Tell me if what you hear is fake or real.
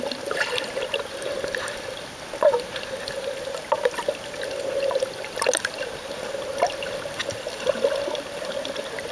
real